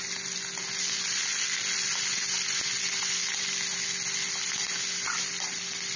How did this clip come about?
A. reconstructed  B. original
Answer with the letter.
B